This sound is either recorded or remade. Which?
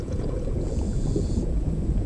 remade